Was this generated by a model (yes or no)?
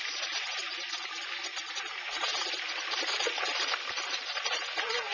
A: no